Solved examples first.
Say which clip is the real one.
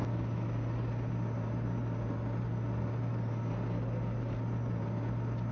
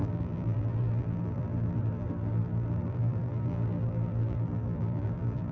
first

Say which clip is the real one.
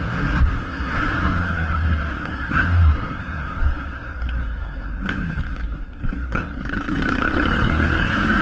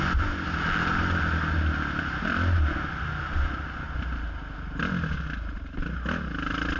second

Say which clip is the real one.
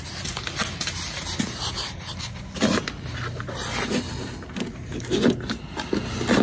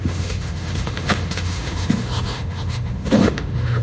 first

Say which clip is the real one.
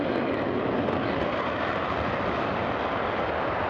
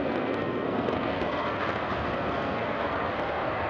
first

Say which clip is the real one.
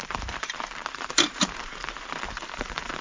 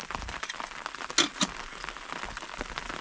second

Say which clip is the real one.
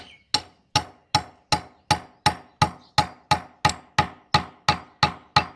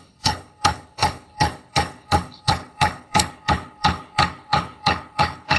first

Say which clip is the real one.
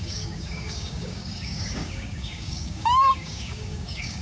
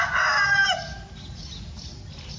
second